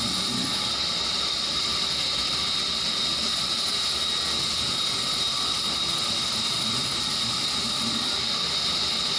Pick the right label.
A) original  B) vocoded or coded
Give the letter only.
A